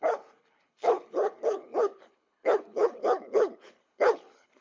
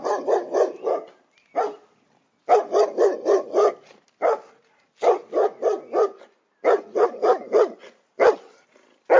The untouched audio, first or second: second